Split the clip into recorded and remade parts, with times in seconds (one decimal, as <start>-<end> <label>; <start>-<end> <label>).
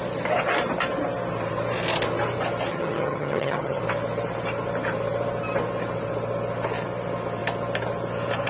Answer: 0.0-2.7 recorded; 2.7-3.8 remade; 3.8-8.5 recorded